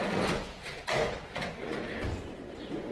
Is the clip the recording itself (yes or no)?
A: no